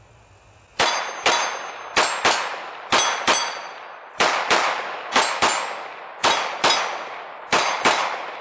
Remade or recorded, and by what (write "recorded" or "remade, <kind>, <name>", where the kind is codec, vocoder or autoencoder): recorded